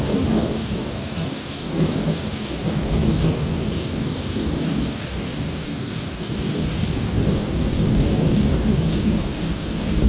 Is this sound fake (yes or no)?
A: yes